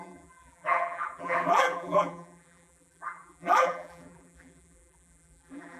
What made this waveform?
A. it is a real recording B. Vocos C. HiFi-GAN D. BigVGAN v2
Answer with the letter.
D